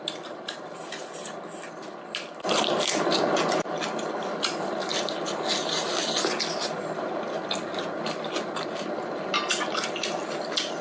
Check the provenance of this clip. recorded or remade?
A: recorded